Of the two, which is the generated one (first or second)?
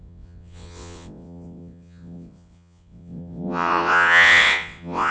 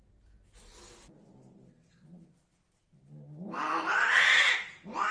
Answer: first